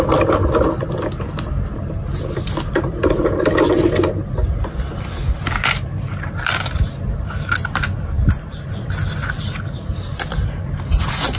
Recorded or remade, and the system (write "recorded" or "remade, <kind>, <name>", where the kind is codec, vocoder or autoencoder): recorded